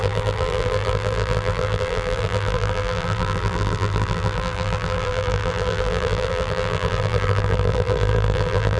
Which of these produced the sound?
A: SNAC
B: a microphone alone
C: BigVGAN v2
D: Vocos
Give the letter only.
C